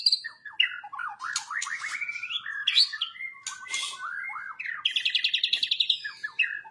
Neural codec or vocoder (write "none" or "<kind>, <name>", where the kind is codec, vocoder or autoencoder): none